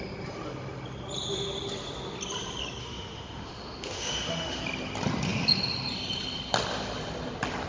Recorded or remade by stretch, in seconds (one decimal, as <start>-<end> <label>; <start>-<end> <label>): 0.0-2.8 recorded; 2.8-4.6 remade; 4.6-7.7 recorded